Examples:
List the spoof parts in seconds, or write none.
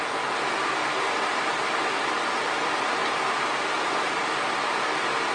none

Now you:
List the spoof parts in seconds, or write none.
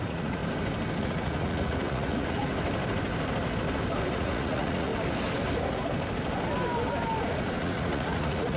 0.0-0.4 (vocoder, Vocos); 1.0-2.5; 4.1-4.9; 7.2-8.6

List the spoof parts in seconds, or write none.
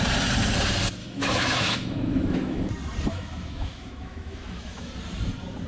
1.0-2.7 (autoencoder, DAC-VAE); 3.1-4.9